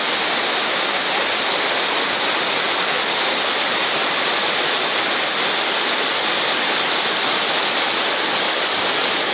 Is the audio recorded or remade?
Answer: recorded